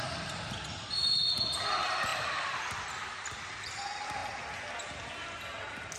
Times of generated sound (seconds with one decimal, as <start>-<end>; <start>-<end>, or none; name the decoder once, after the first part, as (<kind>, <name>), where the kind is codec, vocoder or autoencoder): 2.1-3.8 (vocoder, BigVGAN v2)